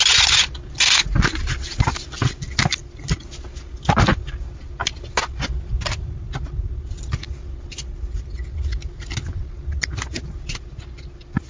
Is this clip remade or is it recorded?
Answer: recorded